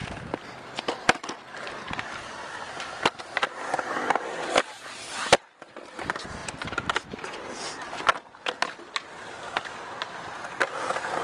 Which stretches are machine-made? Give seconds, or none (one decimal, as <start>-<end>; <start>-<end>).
0.0-3.2